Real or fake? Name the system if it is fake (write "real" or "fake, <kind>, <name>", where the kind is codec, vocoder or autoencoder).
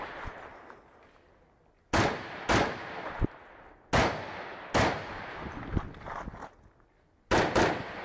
real